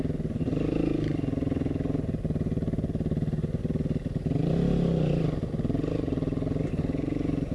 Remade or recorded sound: recorded